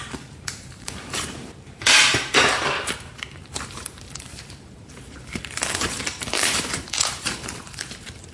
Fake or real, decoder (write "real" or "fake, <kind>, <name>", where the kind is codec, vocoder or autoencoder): fake, vocoder, BigVGAN v2